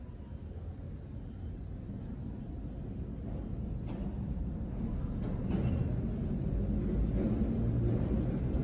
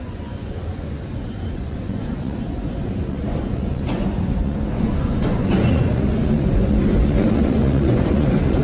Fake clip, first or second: second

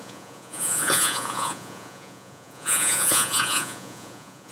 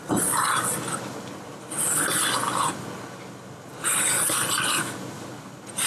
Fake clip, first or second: first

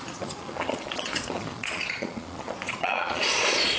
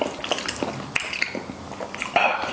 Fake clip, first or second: first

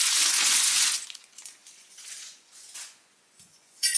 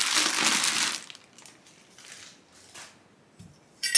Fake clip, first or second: first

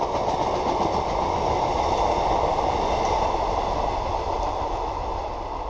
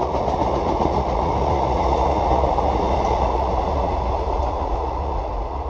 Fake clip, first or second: second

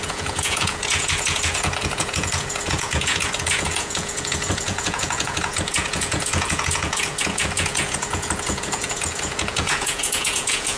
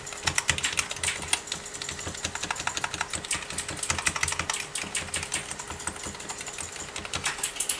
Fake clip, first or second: first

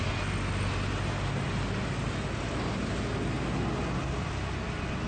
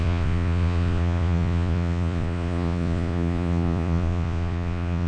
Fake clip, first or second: second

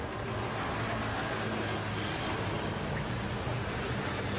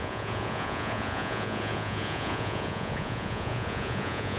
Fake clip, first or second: second